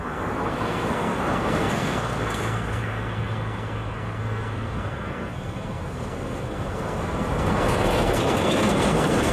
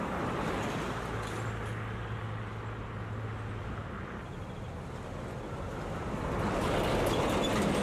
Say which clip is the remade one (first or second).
first